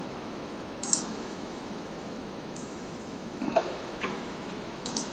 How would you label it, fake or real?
fake